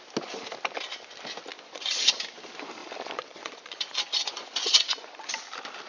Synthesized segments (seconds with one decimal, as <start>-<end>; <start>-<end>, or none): 1.5-2.1; 2.8-5.3